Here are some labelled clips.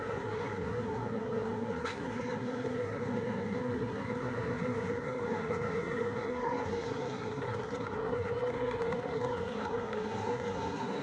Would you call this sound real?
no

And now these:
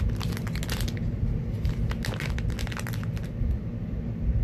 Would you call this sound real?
yes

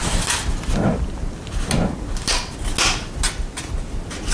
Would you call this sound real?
yes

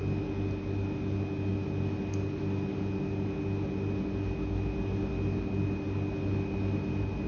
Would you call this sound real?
yes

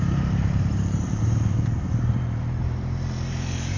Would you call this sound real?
no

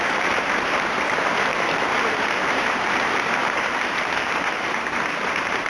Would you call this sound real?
no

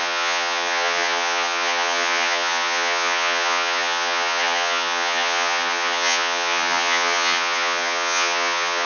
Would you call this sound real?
no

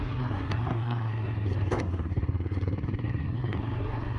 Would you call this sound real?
no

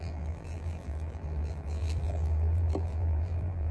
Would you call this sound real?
no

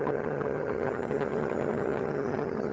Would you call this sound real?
no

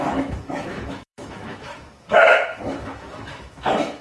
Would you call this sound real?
no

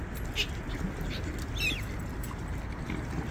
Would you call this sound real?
yes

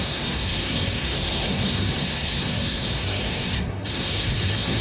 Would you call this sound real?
no